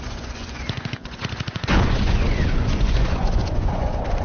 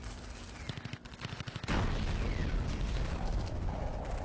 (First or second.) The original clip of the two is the second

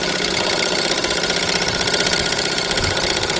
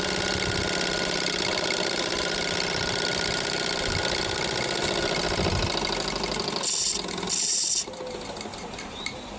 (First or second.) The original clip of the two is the second